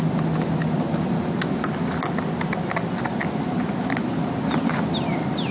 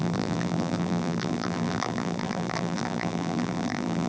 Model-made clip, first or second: second